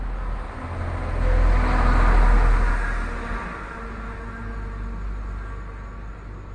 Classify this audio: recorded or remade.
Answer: recorded